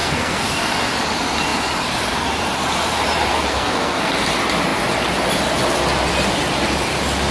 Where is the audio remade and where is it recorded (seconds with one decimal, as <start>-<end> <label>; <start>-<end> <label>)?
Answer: 0.0-0.6 remade; 0.6-3.3 recorded; 3.3-4.1 remade; 4.1-7.3 recorded